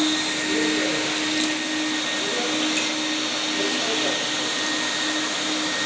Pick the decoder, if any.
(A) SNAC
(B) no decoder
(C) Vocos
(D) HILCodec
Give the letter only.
B